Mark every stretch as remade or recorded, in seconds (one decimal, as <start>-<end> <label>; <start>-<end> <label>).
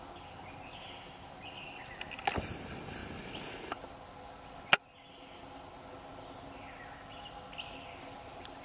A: 0.0-8.6 recorded